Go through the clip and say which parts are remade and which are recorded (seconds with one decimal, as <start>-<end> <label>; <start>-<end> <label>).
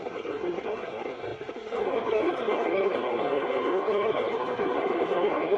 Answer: 0.0-5.6 remade